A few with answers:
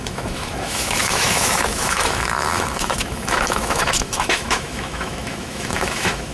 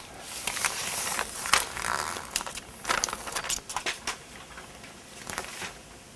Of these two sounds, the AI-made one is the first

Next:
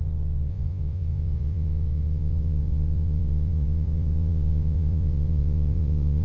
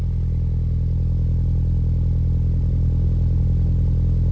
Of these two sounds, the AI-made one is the first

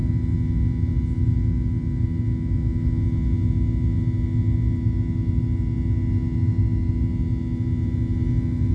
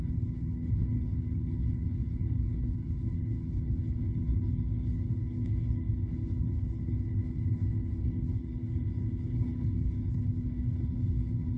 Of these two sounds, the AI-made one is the second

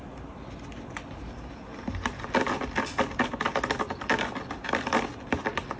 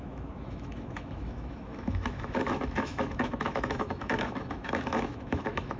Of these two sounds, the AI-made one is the second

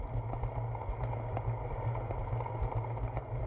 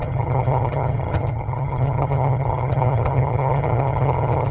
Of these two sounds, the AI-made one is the second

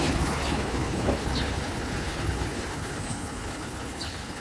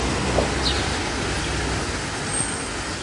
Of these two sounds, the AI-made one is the first